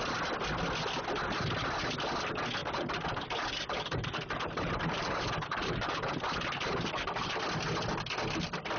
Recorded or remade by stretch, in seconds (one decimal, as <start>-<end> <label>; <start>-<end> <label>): 0.0-2.6 recorded; 2.6-7.4 remade; 7.4-8.8 recorded